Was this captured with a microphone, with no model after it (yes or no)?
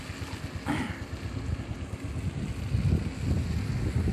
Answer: yes